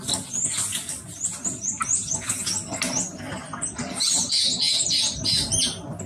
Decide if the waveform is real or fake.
real